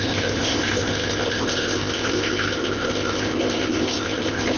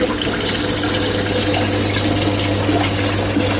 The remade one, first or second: first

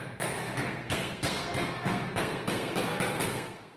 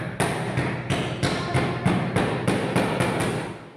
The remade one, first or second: first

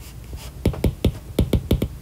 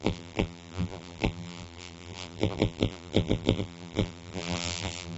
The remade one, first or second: second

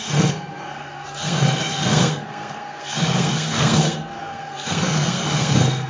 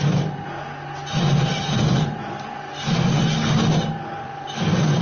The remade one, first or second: first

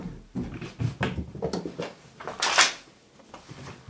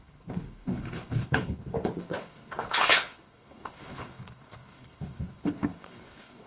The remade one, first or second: second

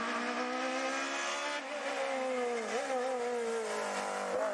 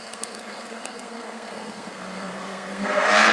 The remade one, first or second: second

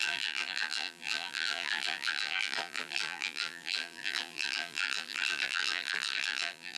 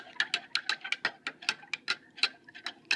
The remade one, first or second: first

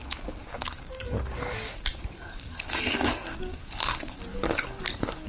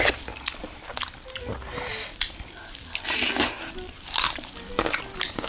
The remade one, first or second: first